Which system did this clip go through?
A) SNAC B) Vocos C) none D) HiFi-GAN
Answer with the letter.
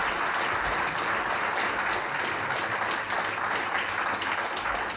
C